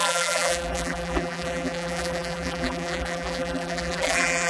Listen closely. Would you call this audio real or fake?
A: fake